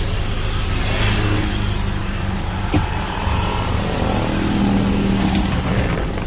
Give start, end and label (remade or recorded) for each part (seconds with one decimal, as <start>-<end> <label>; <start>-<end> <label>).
0.0-2.0 recorded; 2.0-3.2 remade; 3.2-6.3 recorded